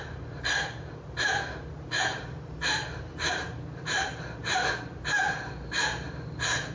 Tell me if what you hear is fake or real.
fake